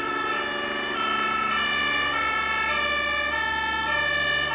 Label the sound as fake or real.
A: real